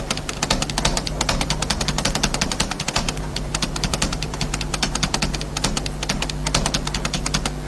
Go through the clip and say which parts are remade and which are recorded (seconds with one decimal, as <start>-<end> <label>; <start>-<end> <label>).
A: 0.0-0.9 recorded; 0.9-5.5 remade; 5.5-7.7 recorded